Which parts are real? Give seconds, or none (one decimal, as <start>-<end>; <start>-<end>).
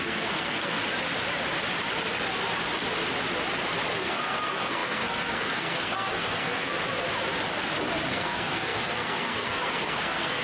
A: 0.8-4.0; 6.8-8.1